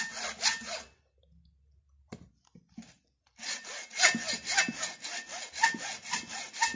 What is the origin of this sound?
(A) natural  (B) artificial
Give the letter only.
A